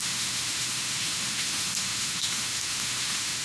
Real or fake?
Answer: fake